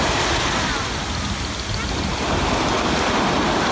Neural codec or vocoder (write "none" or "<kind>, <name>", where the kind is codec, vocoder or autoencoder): none